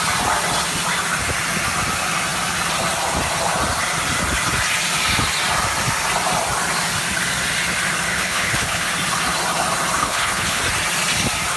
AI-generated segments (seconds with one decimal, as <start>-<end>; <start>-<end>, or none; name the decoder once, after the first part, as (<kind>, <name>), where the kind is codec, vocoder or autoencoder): 8.1-8.9 (codec, HILCodec); 10.0-10.6